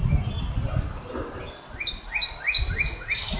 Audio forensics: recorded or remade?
recorded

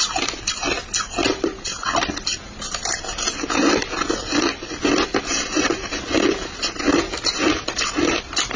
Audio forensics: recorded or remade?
recorded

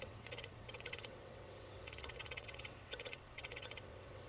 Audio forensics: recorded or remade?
remade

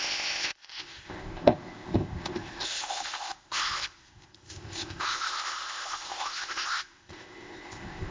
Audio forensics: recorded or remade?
remade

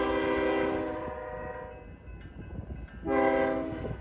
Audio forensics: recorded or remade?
recorded